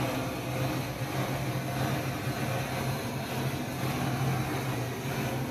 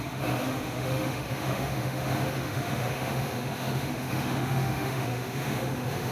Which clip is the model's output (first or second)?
second